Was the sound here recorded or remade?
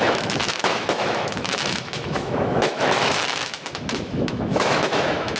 remade